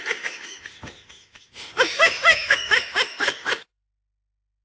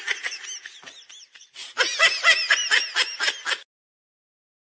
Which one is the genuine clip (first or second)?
second